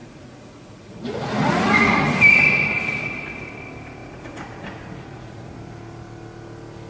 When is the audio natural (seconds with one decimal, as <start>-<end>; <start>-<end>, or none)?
1.9-4.0; 5.5-6.9